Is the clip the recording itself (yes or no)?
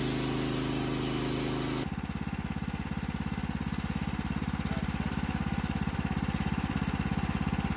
yes